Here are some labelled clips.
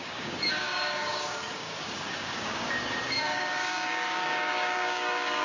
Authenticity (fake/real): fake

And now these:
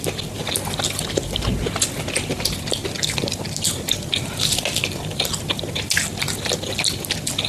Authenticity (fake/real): real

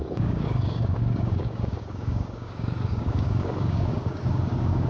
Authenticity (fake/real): fake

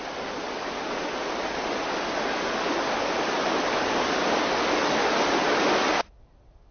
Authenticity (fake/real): real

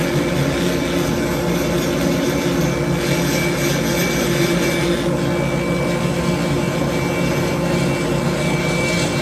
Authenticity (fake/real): real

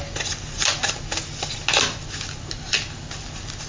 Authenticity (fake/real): real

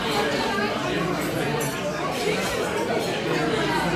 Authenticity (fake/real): real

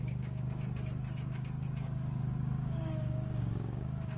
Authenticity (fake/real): fake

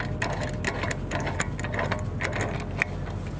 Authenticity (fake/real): real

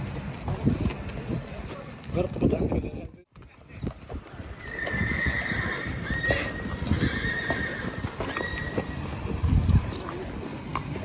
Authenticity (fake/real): real